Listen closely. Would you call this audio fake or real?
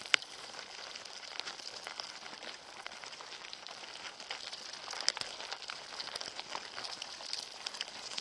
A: fake